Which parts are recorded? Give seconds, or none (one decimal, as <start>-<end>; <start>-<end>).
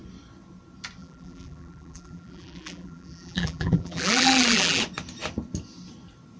0.0-1.0; 4.8-6.4